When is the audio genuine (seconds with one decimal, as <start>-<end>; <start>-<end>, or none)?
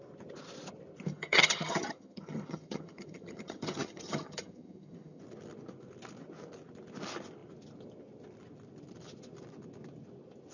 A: 0.0-1.1; 5.2-10.5